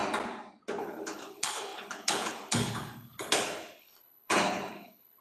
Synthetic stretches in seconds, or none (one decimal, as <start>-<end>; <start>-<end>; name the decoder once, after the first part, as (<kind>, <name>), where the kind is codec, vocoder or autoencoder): 0.8-5.2 (codec, HILCodec)